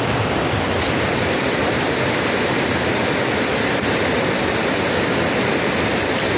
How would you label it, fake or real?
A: fake